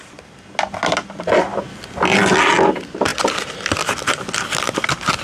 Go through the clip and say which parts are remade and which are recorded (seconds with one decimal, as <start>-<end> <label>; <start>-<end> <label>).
0.0-5.2 recorded